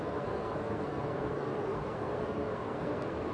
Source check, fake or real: fake